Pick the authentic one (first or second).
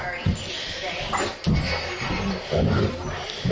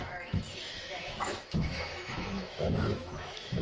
first